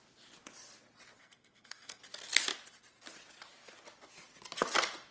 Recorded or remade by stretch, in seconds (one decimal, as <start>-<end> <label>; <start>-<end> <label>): 0.0-1.2 recorded; 1.2-2.0 remade; 2.0-5.1 recorded